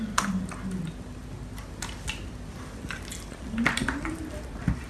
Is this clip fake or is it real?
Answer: real